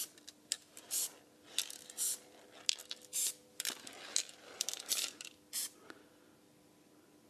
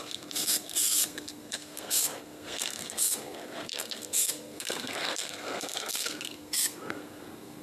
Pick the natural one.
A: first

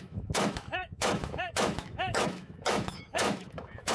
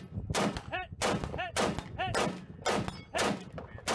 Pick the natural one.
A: second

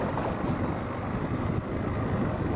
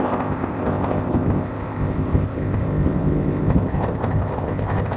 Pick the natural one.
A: first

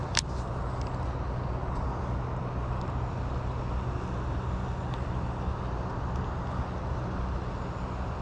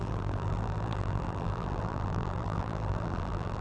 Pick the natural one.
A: first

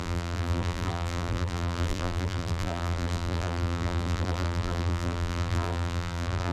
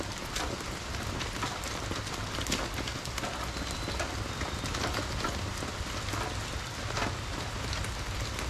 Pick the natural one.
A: second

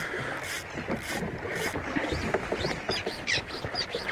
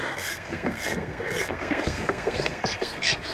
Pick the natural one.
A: first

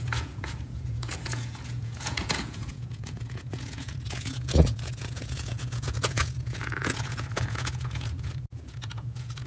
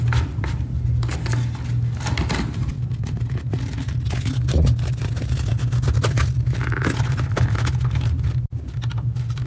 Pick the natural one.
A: second